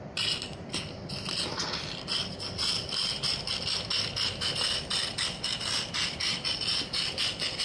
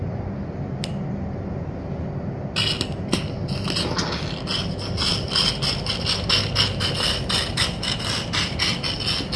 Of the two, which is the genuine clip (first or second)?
second